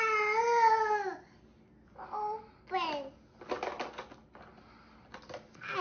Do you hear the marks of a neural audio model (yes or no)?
no